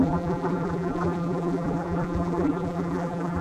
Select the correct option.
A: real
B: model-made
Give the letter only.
B